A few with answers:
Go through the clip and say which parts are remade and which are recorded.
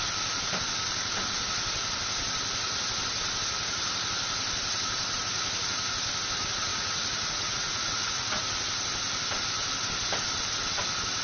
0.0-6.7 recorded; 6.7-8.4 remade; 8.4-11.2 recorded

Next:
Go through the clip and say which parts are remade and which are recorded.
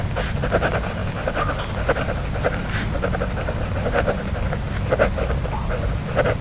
0.0-6.4 recorded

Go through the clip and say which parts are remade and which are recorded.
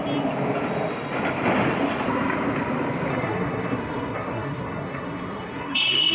0.0-3.1 recorded; 3.1-6.1 remade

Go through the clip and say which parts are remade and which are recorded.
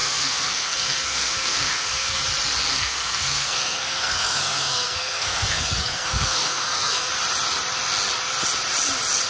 0.0-2.2 remade; 2.2-2.7 recorded; 2.7-7.1 remade; 7.1-9.3 recorded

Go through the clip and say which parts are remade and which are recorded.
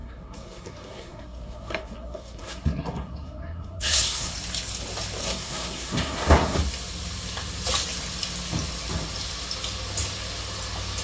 0.0-4.3 remade; 4.3-5.2 recorded; 5.2-6.6 remade; 6.6-11.0 recorded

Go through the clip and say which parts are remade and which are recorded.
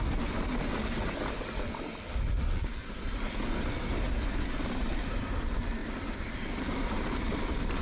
0.0-2.8 recorded; 2.8-4.0 remade; 4.0-5.8 recorded; 5.8-7.0 remade; 7.0-7.8 recorded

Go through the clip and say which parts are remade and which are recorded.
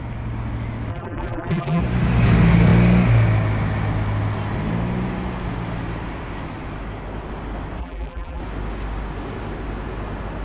0.0-0.9 recorded; 0.9-1.8 remade; 1.8-7.8 recorded; 7.8-8.4 remade; 8.4-10.4 recorded